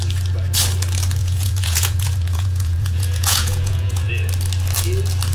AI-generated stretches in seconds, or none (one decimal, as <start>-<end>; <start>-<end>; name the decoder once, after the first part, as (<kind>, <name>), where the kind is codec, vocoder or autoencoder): 1.2-4.1 (vocoder, Vocos)

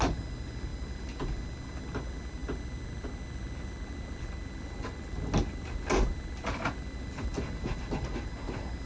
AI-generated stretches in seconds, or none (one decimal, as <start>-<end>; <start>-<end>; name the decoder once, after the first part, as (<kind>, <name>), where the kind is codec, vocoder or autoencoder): none

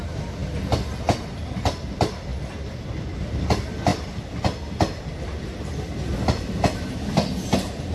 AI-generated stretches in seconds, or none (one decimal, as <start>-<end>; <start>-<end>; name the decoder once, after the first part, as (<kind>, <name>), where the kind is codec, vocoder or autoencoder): none

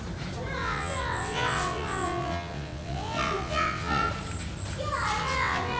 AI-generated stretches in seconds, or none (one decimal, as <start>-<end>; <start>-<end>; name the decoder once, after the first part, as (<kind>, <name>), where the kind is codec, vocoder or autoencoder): 0.6-4.1 (vocoder, WaveNeXt); 5.2-5.8

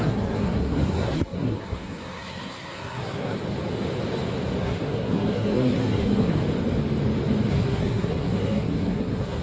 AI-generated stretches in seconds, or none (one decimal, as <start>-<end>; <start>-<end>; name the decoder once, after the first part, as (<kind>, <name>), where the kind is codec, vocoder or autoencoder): 0.0-3.4 (codec, SNAC); 4.6-6.4; 7.5-9.4

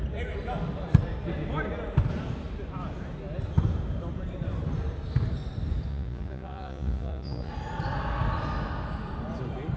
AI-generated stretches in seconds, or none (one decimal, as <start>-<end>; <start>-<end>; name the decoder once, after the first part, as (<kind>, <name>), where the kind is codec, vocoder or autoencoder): 5.9-7.5 (vocoder, Vocos)

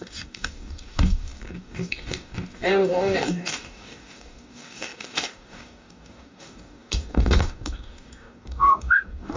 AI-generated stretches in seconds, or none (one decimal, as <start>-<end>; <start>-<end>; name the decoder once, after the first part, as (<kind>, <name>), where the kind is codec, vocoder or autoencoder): 0.0-9.4 (codec, DAC)